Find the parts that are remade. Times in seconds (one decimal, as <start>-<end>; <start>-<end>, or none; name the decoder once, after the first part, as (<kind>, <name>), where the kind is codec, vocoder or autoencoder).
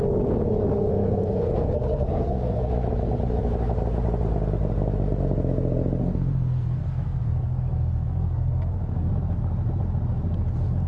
0.7-2.7 (codec, SNAC); 6.0-9.1